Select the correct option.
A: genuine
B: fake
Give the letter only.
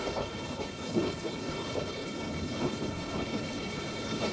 B